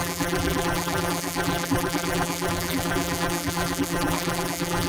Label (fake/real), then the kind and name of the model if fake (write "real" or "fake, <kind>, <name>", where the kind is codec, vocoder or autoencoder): fake, vocoder, BigVGAN v2